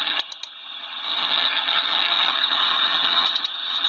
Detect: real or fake fake